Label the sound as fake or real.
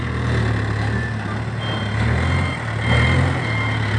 real